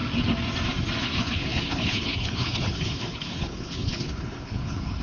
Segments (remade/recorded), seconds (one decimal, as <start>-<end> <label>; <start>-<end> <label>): 0.0-1.0 recorded; 1.0-5.0 remade

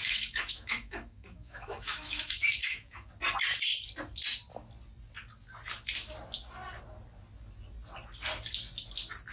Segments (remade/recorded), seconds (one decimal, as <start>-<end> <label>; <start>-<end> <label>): 0.0-3.1 remade; 3.1-9.3 recorded

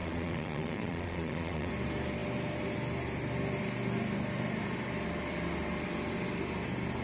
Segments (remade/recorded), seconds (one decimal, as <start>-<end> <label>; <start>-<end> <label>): 0.0-1.7 remade; 1.7-7.0 recorded

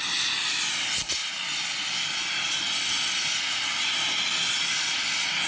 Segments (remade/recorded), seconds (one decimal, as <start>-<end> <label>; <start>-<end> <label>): 0.0-5.5 recorded

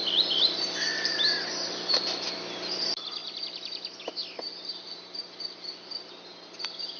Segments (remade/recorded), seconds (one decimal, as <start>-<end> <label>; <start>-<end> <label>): 0.0-7.0 recorded

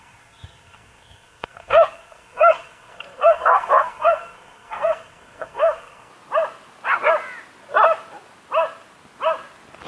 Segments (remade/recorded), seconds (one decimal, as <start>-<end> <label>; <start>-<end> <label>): 0.0-6.1 remade; 6.1-9.9 recorded

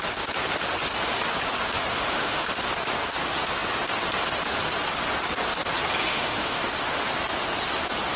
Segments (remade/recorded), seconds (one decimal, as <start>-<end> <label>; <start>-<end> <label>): 0.0-1.9 recorded; 1.9-2.5 remade; 2.5-6.0 recorded; 6.0-6.6 remade; 6.6-8.2 recorded